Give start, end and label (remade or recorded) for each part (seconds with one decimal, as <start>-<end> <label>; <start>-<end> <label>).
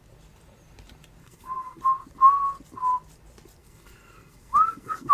0.0-1.2 recorded; 1.2-1.8 remade; 1.8-3.6 recorded; 3.6-5.1 remade